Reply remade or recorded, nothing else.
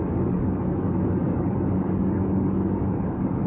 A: remade